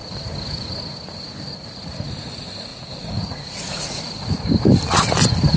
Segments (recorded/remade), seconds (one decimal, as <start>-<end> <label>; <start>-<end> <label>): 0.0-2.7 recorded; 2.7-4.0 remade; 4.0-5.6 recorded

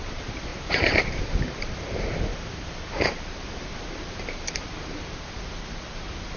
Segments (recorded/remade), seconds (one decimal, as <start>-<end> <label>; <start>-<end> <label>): 0.0-0.5 remade; 0.5-1.0 recorded; 1.0-2.3 remade; 2.3-2.9 recorded; 2.9-6.4 remade

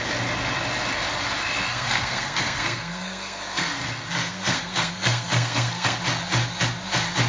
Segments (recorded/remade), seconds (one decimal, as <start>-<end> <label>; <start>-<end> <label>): 0.0-1.7 recorded; 1.7-3.8 remade; 3.8-4.2 recorded; 4.2-6.0 remade; 6.0-7.3 recorded